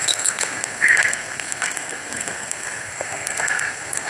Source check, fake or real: fake